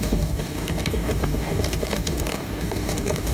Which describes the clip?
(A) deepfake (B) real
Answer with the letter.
A